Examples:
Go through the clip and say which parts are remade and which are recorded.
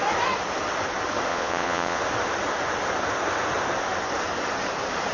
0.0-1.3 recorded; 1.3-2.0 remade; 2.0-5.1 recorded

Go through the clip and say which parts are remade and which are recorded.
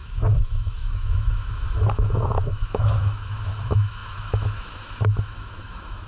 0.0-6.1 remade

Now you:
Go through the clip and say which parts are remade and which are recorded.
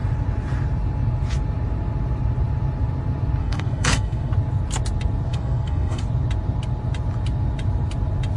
0.0-3.4 recorded; 3.4-4.3 remade; 4.3-5.3 recorded; 5.3-6.0 remade; 6.0-8.4 recorded